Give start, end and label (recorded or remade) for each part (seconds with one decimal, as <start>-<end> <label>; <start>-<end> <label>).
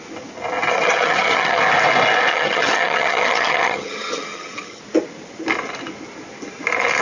0.0-0.7 recorded; 0.7-1.6 remade; 1.6-2.3 recorded; 2.3-4.8 remade; 4.8-7.0 recorded